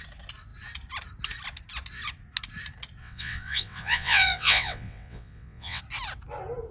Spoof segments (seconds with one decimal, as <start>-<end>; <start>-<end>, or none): 3.0-5.8

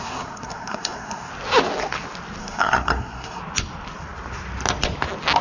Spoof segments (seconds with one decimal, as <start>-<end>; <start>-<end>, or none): 0.0-1.3; 2.4-3.4